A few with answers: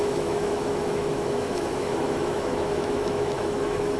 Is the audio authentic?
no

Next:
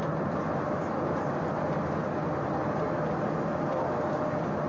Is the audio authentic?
yes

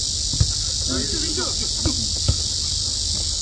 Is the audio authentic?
yes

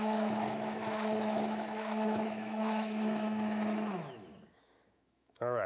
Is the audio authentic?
no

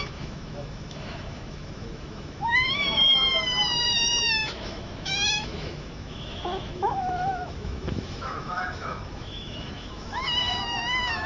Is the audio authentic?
no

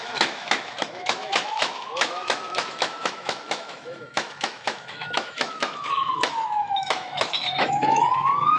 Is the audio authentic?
no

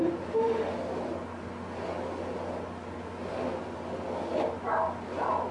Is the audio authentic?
yes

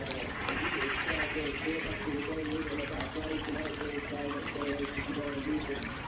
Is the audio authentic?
yes